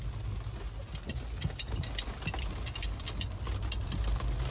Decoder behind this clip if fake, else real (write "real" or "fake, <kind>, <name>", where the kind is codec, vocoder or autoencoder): real